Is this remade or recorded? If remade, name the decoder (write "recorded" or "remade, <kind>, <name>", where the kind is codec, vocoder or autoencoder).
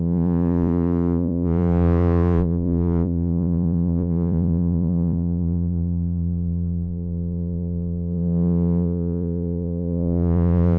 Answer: remade, vocoder, Vocos